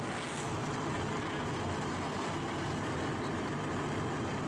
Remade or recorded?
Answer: recorded